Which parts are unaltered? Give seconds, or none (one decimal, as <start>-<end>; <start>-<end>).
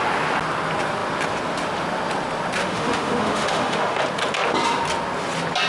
0.0-2.6; 4.0-5.7